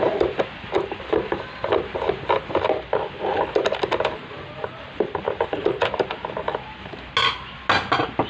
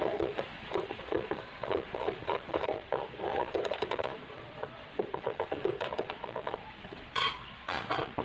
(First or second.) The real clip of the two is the first